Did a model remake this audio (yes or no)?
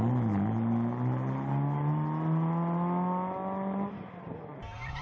no